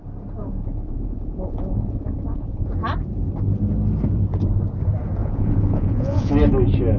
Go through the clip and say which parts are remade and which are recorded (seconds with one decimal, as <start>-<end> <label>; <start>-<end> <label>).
0.0-0.4 recorded; 0.4-2.7 remade; 2.7-5.2 recorded; 5.2-6.3 remade; 6.3-7.0 recorded